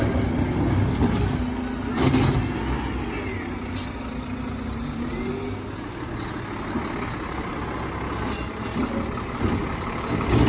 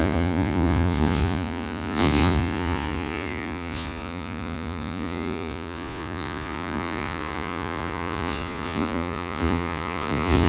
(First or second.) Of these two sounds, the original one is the first